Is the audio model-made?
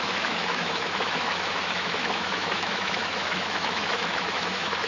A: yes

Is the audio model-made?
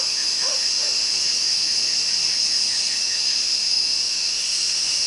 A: yes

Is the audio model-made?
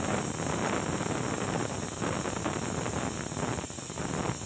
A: no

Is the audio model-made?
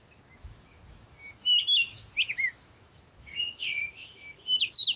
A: yes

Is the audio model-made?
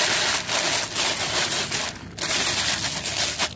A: no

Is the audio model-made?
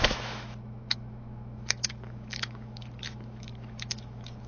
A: yes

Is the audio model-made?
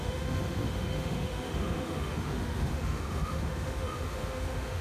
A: yes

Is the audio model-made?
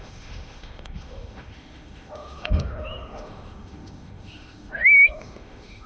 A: yes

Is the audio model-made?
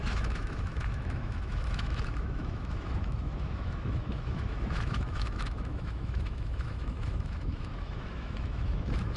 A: yes